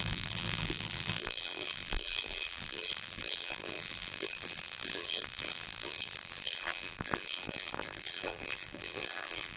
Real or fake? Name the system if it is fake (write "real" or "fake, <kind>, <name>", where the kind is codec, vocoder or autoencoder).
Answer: fake, vocoder, BigVGAN v2